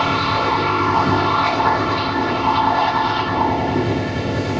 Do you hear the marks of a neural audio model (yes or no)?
yes